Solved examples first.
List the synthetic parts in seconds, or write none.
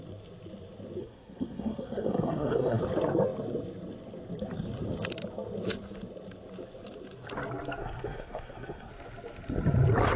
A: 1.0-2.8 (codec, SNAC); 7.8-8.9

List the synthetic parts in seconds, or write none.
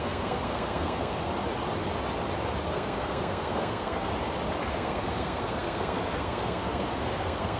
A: 0.0-1.3 (codec, SNAC); 2.6-4.1; 4.7-7.6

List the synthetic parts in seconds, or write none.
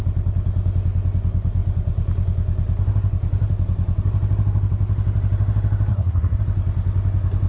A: 5.9-6.4 (codec, SNAC)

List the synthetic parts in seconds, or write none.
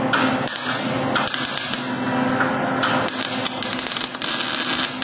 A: none